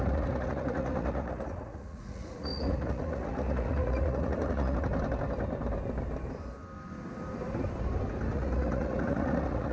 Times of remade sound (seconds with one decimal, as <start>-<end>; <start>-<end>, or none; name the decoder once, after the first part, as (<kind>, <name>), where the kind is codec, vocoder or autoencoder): 0.0-4.9 (vocoder, Vocos); 8.3-9.7